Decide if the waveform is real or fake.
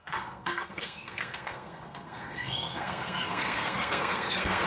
fake